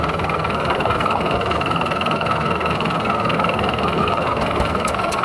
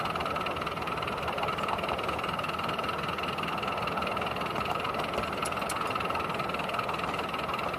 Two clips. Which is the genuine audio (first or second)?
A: second